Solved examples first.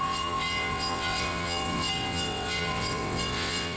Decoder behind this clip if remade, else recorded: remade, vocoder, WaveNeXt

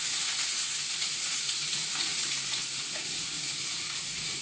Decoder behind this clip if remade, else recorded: remade, vocoder, Vocos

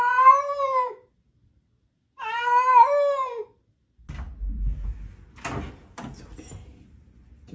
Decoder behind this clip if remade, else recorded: recorded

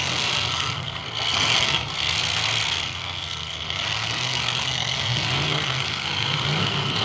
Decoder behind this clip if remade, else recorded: remade, codec, SNAC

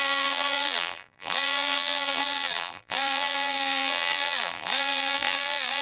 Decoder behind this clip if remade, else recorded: remade, vocoder, BigVGAN v2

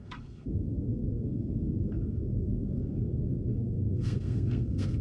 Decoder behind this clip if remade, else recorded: remade, codec, SNAC